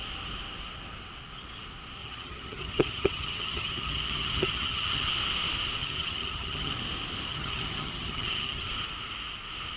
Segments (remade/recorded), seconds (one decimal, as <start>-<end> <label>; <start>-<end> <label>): 0.0-2.0 recorded; 2.0-5.1 remade; 5.1-5.8 recorded; 5.8-6.7 remade; 6.7-7.3 recorded; 7.3-8.7 remade; 8.7-9.8 recorded